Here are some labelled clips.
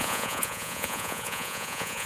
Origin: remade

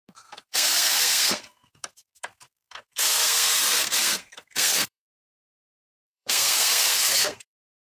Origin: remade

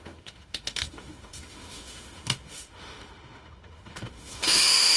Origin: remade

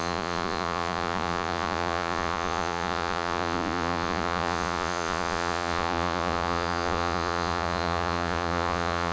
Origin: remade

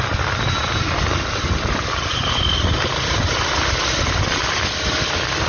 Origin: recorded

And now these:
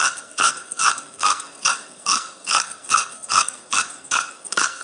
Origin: remade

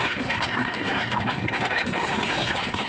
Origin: remade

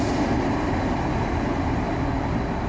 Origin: recorded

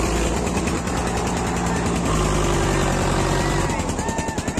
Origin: recorded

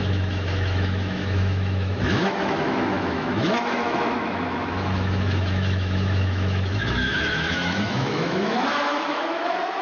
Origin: remade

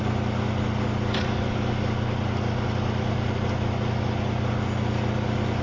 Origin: recorded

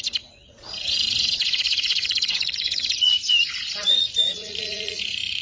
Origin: remade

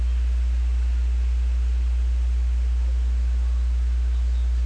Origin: recorded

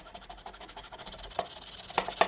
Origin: recorded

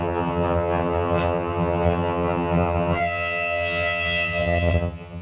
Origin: remade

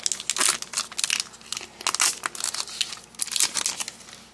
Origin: recorded